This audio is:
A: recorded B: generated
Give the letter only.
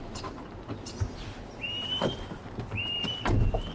A